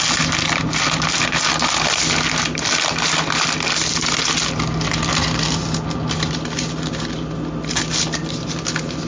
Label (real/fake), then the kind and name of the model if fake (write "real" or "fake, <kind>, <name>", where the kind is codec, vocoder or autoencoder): real